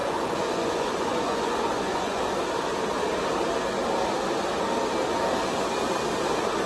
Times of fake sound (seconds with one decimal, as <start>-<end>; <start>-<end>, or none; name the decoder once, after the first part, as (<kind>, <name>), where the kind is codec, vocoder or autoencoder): 0.0-2.2 (vocoder, Vocos)